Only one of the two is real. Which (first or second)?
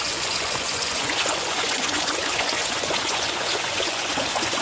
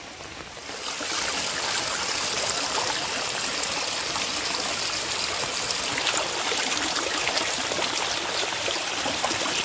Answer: second